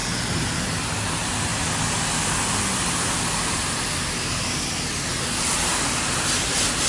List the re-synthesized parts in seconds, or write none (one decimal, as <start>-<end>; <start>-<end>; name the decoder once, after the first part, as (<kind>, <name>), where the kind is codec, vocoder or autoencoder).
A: none